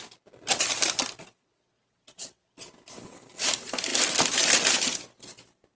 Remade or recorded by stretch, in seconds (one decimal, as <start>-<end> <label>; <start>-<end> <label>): 0.0-5.7 recorded